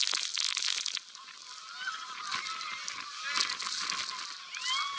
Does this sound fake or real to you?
real